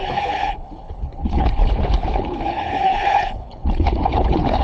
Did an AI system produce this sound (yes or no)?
yes